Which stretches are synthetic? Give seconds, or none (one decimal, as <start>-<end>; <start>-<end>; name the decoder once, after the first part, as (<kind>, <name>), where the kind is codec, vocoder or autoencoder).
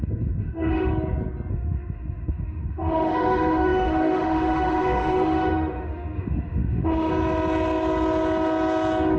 0.0-0.9 (autoencoder, DAC-VAE); 1.5-7.1